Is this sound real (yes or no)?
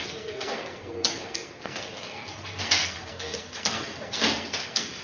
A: no